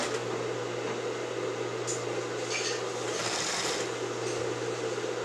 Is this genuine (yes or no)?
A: yes